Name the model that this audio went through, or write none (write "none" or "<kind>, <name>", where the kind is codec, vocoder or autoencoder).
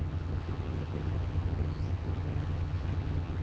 vocoder, HiFi-GAN